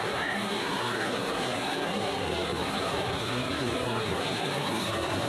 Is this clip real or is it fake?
fake